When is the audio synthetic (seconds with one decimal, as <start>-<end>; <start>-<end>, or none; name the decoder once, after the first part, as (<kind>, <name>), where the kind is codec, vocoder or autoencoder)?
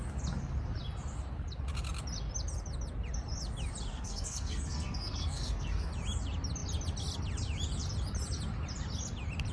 3.9-5.9 (codec, SNAC)